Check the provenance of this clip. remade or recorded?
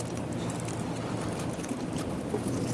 recorded